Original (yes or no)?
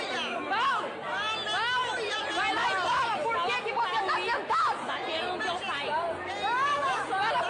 yes